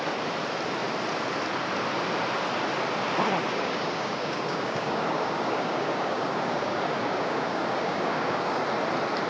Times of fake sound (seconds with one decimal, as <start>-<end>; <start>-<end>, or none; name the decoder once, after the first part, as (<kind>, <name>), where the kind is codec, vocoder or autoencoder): 3.5-8.6 (codec, DAC)